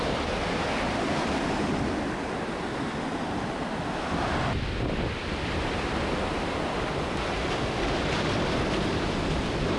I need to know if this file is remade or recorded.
recorded